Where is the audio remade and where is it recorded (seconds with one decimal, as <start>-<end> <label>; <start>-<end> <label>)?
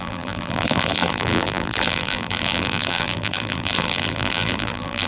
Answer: 0.0-5.1 remade